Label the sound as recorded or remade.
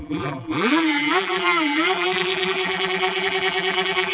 remade